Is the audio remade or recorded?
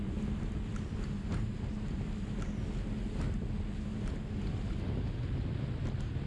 recorded